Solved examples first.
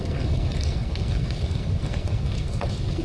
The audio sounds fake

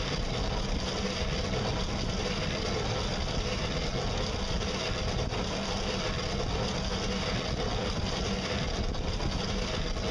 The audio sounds real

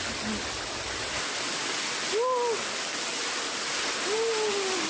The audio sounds real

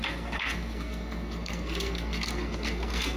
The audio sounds fake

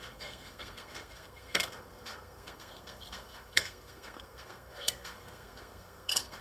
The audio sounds fake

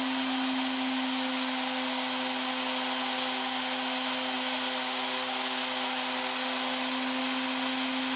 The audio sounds real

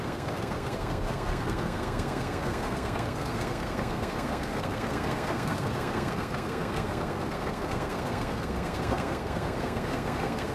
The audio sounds fake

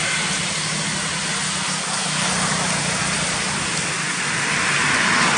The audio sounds real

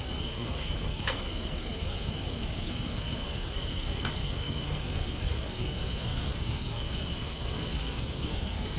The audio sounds fake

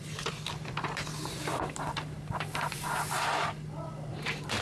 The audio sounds real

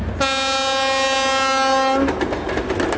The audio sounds real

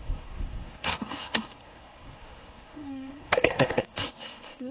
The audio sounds fake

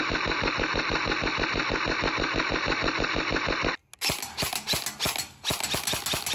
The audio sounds real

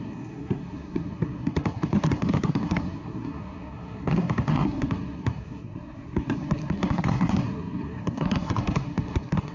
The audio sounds fake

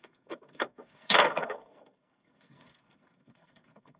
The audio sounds fake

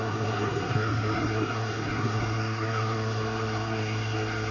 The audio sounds fake